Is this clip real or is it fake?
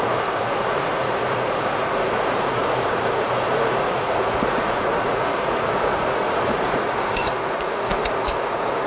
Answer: fake